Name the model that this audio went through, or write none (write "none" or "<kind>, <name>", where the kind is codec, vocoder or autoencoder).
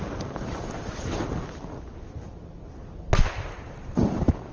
none